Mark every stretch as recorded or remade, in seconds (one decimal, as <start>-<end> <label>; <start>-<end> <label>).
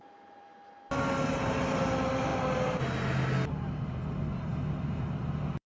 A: 0.0-5.7 recorded